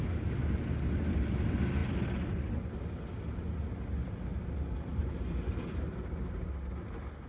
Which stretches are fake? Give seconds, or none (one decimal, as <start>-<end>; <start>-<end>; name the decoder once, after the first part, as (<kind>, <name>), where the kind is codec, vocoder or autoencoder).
none